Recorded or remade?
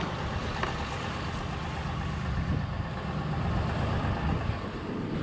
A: recorded